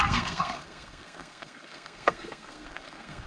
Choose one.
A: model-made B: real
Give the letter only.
A